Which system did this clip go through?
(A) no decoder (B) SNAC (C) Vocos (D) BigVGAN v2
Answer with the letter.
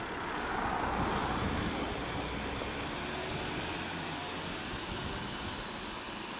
A